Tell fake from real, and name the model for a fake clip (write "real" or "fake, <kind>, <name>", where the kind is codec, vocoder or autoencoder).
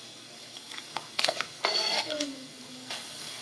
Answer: fake, codec, SNAC